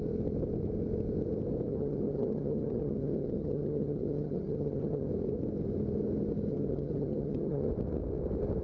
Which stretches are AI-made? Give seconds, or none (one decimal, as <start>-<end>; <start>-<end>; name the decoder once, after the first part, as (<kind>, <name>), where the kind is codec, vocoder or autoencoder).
1.7-5.1 (vocoder, HiFi-GAN); 6.5-7.7